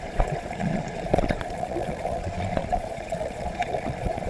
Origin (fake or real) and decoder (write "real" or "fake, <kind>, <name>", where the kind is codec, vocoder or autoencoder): fake, vocoder, Vocos